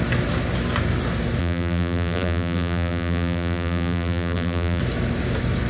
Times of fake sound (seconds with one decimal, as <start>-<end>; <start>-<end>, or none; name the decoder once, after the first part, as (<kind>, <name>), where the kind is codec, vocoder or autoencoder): 1.4-4.8 (vocoder, BigVGAN v2)